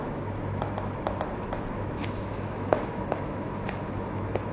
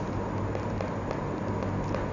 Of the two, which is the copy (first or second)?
first